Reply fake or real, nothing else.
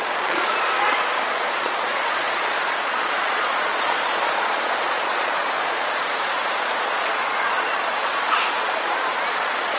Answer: fake